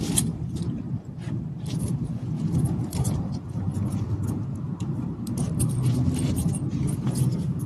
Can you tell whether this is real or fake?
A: fake